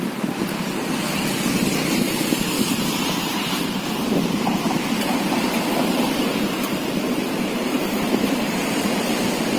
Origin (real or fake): fake